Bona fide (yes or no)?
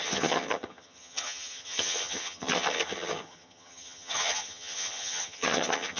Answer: no